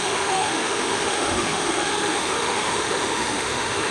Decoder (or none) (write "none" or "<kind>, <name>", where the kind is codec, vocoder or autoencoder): autoencoder, DAC-VAE